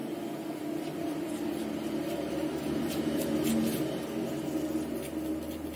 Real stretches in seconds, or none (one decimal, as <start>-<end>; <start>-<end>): 3.5-5.8

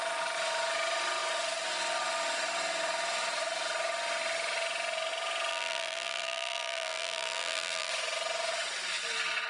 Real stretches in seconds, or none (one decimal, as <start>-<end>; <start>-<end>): 0.0-5.5; 7.9-9.5